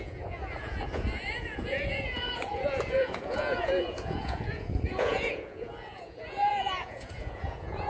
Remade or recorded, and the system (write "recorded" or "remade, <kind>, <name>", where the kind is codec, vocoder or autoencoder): remade, vocoder, Vocos